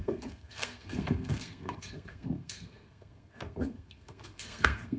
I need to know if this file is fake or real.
fake